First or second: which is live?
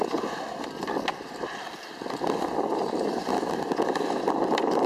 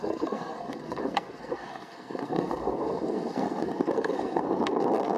first